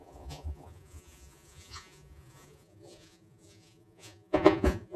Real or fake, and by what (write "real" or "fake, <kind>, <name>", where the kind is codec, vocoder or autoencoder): fake, vocoder, Vocos